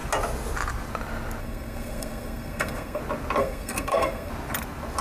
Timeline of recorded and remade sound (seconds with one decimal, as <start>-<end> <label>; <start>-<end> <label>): 0.0-1.4 recorded; 1.4-3.0 remade; 3.0-3.4 recorded; 3.4-4.3 remade; 4.3-5.0 recorded